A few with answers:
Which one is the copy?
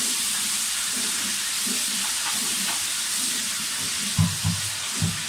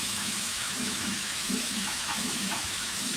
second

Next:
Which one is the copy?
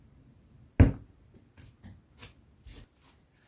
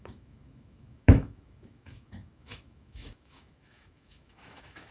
second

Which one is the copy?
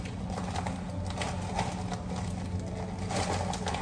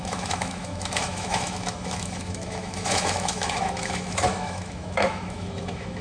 second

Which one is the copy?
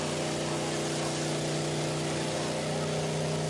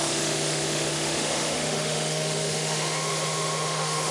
second